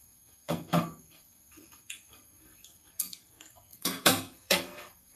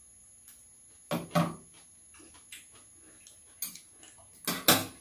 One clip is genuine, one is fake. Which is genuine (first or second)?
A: second